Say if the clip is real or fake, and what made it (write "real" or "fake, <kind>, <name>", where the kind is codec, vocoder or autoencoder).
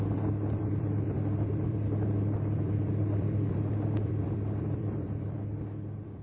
fake, vocoder, BigVGAN v2